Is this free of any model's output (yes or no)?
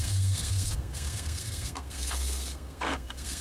no